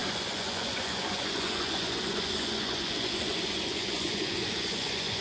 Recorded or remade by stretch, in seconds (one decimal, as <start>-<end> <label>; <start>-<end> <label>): 0.0-5.2 remade

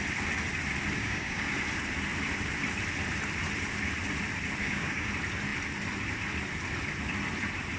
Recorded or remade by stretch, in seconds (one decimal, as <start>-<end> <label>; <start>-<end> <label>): 0.0-1.0 recorded; 1.0-1.5 remade; 1.5-4.6 recorded; 4.6-5.1 remade; 5.1-7.8 recorded

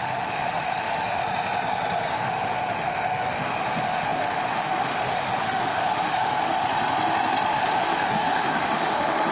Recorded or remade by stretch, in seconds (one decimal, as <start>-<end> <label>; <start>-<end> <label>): 0.0-1.2 remade; 1.2-2.1 recorded; 2.1-6.6 remade; 6.6-7.5 recorded; 7.5-9.3 remade

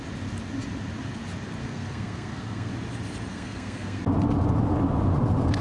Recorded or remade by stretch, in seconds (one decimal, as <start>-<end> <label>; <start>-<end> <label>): 0.0-1.6 recorded; 1.6-2.7 remade; 2.7-3.3 recorded; 3.3-4.0 remade; 4.0-5.6 recorded

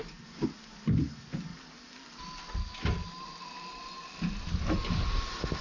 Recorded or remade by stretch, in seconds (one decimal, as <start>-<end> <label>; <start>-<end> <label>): 0.0-5.6 recorded